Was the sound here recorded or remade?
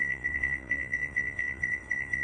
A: remade